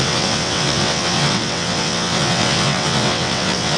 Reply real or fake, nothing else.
fake